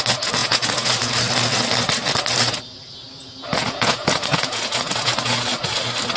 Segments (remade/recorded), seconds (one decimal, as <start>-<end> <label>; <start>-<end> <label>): 0.0-0.4 recorded; 0.4-1.1 remade; 1.1-3.6 recorded; 3.6-5.1 remade; 5.1-6.2 recorded